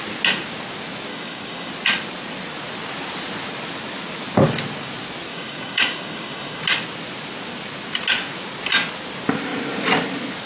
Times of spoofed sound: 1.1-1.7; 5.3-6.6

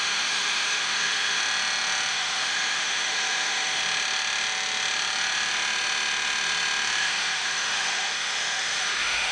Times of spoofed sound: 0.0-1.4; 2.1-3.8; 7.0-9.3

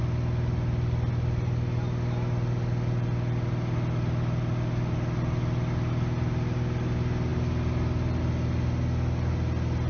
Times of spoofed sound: none